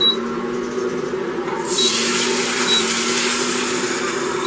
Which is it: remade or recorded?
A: recorded